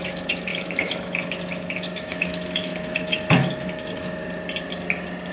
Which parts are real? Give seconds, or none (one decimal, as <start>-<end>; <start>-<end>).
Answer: 4.2-5.3